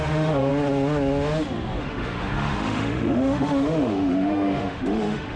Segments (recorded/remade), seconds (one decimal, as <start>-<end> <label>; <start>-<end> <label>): 0.0-0.5 remade; 0.5-1.8 recorded; 1.8-5.4 remade